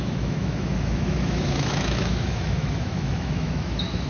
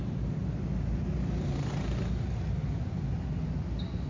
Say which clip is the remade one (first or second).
first